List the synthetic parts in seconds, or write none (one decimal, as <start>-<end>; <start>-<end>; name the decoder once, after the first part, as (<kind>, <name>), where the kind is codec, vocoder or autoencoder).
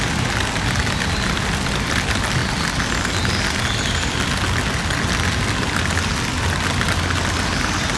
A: none